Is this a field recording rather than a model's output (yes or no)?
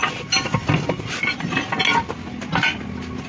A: yes